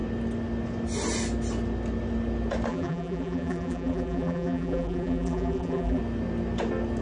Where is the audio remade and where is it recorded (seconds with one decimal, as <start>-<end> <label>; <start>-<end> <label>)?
0.0-2.7 recorded; 2.7-6.0 remade; 6.0-7.0 recorded